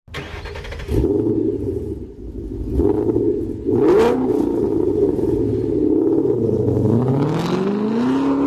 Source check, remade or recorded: recorded